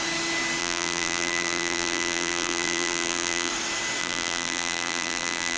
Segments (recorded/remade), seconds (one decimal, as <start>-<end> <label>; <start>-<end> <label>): 0.0-0.6 recorded; 0.6-3.5 remade; 3.5-4.0 recorded; 4.0-5.6 remade